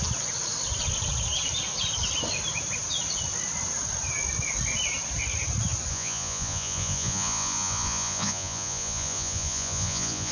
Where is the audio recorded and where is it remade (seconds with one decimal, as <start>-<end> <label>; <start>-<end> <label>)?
0.0-5.9 recorded; 5.9-10.3 remade